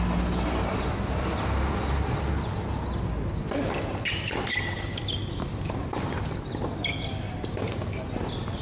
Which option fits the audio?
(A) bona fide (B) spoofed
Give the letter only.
A